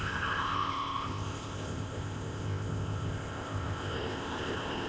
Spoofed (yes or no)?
yes